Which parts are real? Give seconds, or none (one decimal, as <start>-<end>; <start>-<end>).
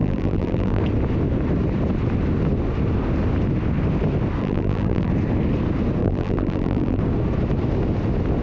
0.8-4.4; 5.1-6.0; 7.0-8.4